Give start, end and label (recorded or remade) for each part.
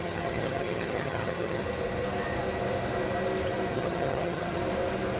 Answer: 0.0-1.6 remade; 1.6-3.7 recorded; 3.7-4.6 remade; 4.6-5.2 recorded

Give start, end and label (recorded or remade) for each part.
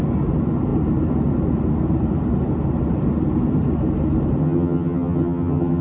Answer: 0.0-4.4 recorded; 4.4-5.8 remade